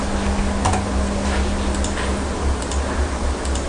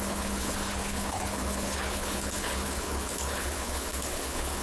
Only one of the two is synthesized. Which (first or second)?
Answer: second